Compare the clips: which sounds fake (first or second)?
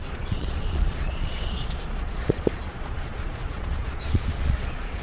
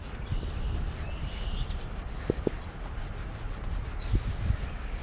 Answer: first